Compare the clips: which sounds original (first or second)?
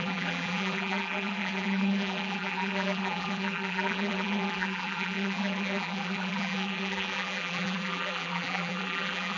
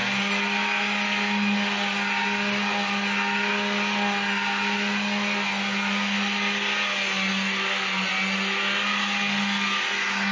second